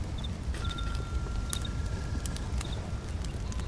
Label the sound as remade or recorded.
recorded